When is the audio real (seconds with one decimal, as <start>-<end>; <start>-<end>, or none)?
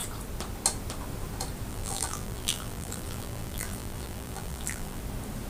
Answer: 0.0-1.7; 5.0-5.5